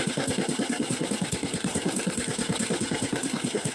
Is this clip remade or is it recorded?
remade